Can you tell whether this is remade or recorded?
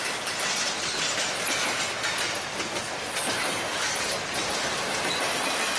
recorded